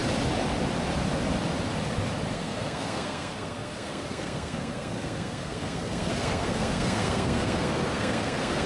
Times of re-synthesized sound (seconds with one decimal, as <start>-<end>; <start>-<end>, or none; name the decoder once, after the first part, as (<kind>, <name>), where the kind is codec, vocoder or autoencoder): 2.3-8.7 (codec, SNAC)